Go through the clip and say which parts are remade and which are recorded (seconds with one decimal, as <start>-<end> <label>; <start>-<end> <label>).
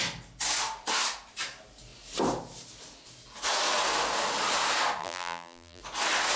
0.0-5.0 recorded; 5.0-5.8 remade; 5.8-6.4 recorded